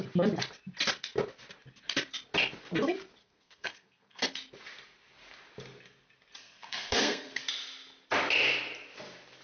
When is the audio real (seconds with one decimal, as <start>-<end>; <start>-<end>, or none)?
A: 0.0-3.2; 4.2-6.4; 7.4-9.4